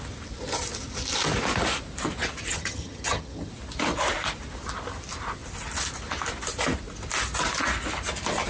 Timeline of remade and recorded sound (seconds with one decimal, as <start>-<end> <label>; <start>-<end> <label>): 0.0-2.5 recorded; 2.5-3.5 remade; 3.5-8.5 recorded